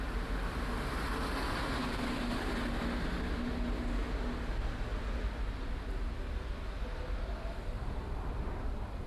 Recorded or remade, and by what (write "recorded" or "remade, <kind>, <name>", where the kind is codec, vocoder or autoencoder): recorded